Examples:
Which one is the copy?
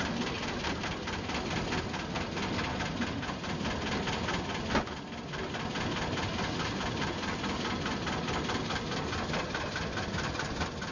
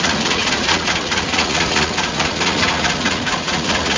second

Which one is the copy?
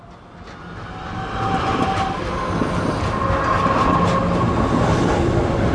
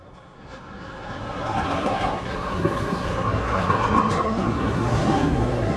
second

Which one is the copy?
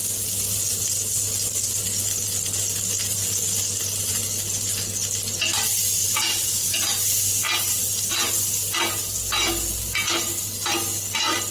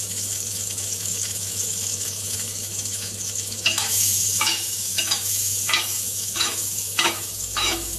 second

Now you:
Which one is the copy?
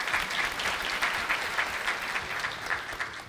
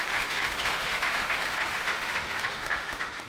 second